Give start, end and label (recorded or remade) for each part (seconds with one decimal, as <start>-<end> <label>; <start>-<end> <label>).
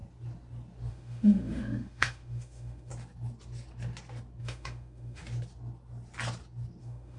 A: 0.0-0.9 recorded; 0.9-2.9 remade; 2.9-4.4 recorded; 4.4-5.2 remade; 5.2-6.8 recorded; 6.8-7.2 remade